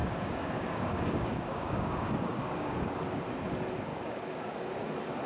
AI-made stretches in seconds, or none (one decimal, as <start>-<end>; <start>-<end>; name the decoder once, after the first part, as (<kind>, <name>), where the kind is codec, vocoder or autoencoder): 0.0-3.2 (codec, DAC); 3.9-4.7